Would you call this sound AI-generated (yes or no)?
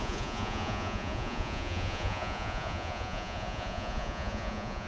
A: yes